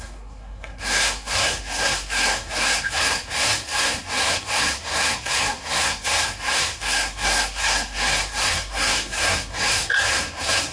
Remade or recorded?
remade